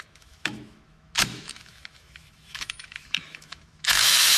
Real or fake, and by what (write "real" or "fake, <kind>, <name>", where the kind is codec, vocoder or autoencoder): fake, autoencoder, DAC-VAE